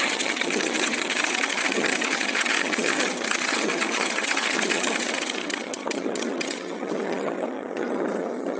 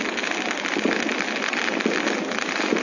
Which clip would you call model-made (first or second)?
first